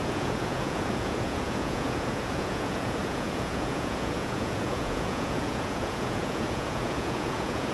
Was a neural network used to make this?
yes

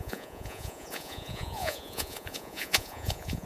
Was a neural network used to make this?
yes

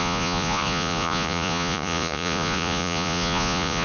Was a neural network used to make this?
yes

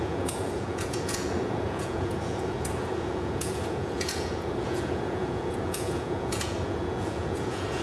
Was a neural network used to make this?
yes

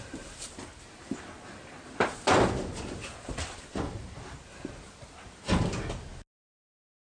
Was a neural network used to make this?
no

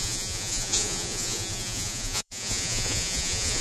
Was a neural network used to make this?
yes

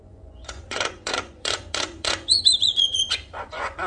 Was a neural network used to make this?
yes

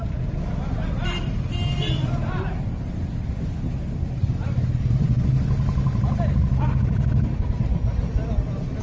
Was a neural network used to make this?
no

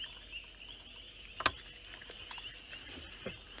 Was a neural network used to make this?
no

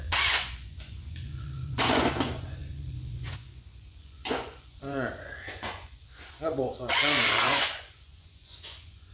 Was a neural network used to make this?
yes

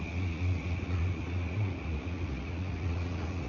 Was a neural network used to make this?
yes